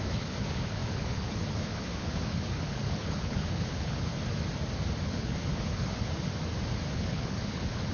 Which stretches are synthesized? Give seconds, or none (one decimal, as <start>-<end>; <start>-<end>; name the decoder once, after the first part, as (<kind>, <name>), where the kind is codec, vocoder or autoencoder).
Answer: 0.0-4.1 (codec, HILCodec); 5.0-6.1; 6.9-7.9